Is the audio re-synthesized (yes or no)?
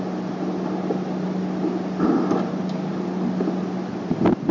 no